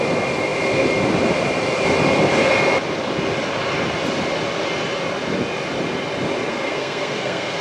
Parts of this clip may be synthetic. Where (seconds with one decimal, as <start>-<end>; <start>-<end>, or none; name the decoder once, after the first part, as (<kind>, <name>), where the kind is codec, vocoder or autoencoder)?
6.5-7.6 (codec, SNAC)